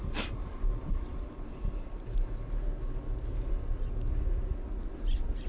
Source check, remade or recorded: recorded